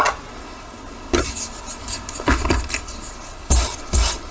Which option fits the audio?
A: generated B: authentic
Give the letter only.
B